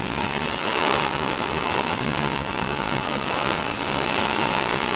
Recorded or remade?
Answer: remade